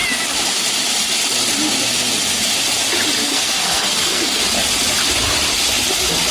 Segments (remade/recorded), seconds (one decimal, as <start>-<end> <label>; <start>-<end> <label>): 0.0-3.2 recorded; 3.2-4.4 remade; 4.4-6.3 recorded